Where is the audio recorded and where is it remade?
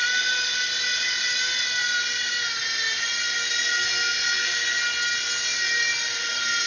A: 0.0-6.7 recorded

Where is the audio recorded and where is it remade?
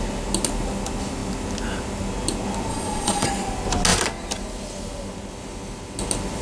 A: 0.0-2.7 recorded; 2.7-3.3 remade; 3.3-6.4 recorded